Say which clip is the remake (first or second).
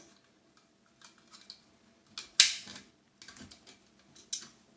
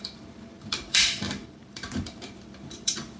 second